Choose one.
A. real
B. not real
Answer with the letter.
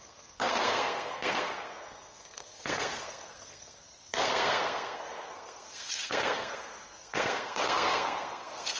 B